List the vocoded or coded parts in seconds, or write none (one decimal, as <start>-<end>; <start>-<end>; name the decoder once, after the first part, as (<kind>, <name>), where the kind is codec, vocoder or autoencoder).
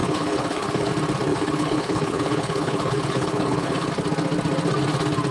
0.0-0.9 (codec, HILCodec); 1.3-3.9